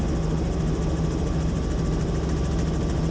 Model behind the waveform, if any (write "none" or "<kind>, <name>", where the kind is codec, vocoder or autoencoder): none